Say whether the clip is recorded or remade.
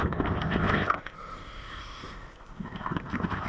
remade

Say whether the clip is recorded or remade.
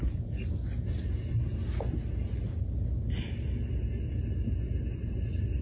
recorded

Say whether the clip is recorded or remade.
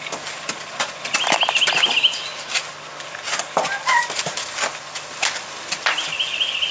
recorded